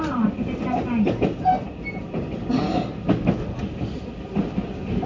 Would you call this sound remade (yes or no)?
no